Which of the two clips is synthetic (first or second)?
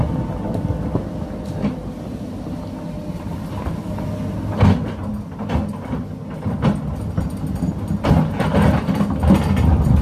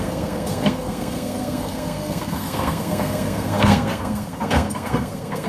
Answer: second